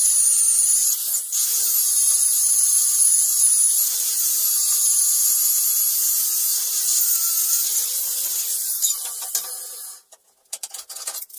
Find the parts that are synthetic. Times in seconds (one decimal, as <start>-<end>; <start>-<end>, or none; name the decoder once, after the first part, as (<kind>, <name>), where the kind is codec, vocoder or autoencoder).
0.9-6.5 (vocoder, Vocos); 9.5-11.4